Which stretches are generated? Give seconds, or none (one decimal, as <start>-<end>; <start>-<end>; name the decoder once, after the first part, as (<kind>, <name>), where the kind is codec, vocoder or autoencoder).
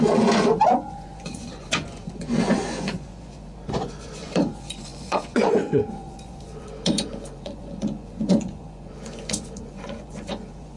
0.0-10.8 (vocoder, Vocos)